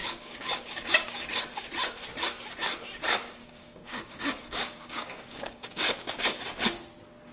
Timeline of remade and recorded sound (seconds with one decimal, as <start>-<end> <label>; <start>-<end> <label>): 0.0-1.4 remade; 1.4-3.4 recorded; 3.4-6.4 remade; 6.4-7.3 recorded